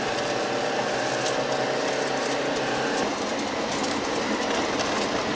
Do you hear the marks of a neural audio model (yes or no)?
no